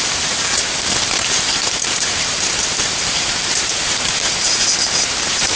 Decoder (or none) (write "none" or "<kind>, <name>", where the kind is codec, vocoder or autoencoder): vocoder, BigVGAN v2